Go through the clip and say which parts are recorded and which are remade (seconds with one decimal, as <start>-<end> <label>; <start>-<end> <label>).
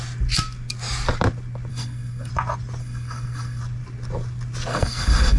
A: 0.0-1.7 recorded; 1.7-2.3 remade; 2.3-2.8 recorded; 2.8-3.6 remade; 3.6-4.7 recorded; 4.7-5.4 remade